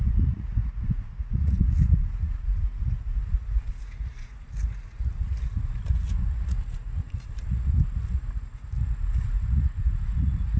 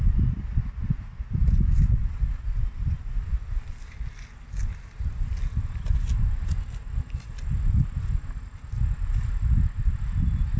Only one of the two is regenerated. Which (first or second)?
first